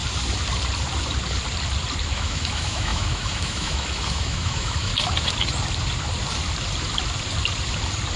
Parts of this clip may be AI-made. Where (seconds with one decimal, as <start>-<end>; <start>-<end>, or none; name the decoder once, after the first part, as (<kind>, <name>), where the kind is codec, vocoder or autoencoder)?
2.1-4.9 (autoencoder, DAC-VAE)